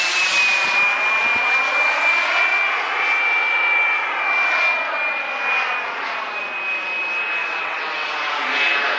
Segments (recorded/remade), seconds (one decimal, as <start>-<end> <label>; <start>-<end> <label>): 0.0-7.4 recorded; 7.4-8.1 remade; 8.1-9.0 recorded

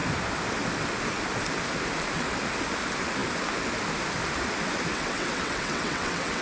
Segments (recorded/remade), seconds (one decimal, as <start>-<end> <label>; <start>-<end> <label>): 0.0-4.9 recorded; 4.9-6.4 remade